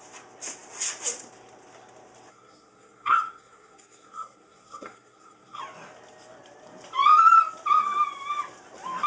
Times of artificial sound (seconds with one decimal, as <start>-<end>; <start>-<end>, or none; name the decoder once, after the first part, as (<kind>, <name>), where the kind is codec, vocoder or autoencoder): 2.3-5.6 (codec, SNAC)